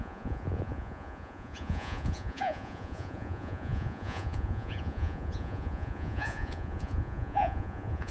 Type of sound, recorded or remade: remade